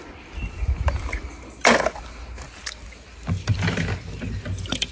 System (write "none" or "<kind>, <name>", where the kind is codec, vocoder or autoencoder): none